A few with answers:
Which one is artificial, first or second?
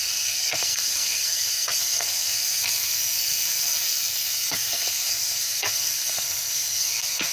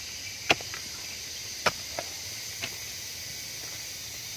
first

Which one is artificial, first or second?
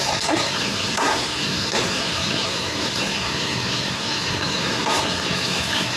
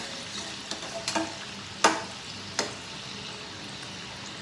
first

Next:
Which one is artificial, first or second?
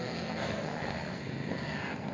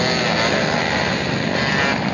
first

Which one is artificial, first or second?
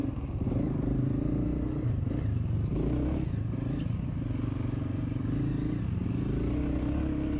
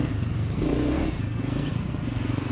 second